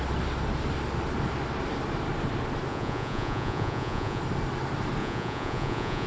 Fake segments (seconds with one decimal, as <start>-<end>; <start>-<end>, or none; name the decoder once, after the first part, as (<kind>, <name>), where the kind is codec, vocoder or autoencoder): 2.7-4.2 (vocoder, Vocos); 5.0-6.1